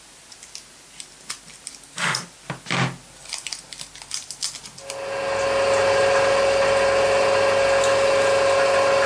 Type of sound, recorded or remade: recorded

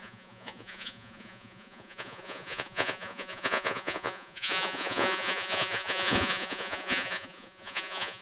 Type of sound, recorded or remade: remade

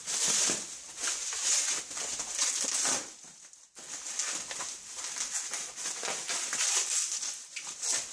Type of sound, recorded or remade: recorded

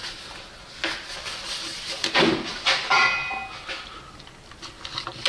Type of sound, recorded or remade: recorded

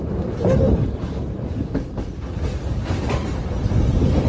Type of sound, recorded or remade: recorded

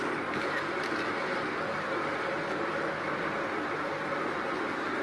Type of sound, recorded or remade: recorded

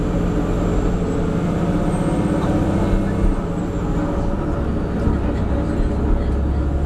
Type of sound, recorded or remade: recorded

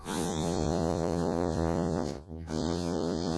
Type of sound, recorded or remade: remade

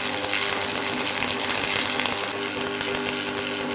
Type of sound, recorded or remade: recorded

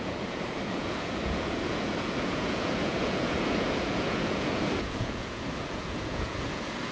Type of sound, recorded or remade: remade